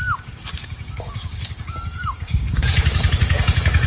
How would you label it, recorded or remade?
remade